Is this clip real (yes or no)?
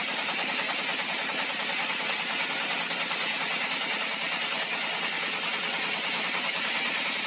yes